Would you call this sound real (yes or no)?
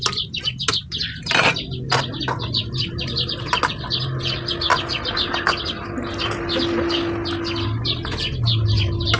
yes